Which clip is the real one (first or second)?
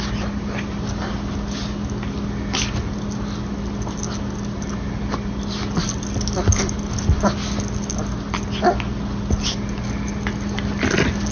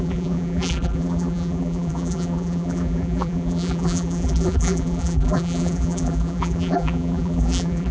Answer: first